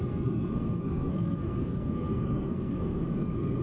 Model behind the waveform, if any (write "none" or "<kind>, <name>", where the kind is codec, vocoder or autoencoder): codec, SNAC